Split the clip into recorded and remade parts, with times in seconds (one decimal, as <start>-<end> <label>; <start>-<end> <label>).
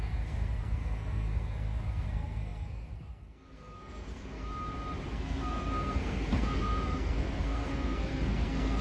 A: 0.0-4.5 remade; 4.5-5.1 recorded; 5.1-8.8 remade